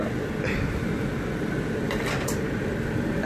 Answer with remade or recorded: recorded